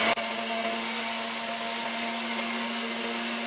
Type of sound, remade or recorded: recorded